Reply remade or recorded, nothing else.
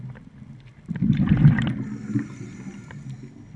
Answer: recorded